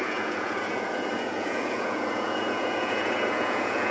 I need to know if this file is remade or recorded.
remade